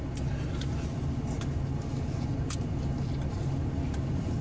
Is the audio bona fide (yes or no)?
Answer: yes